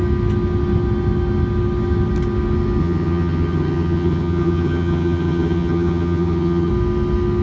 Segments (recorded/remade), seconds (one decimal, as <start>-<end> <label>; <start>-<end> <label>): 0.0-2.8 recorded; 2.8-6.7 remade; 6.7-7.4 recorded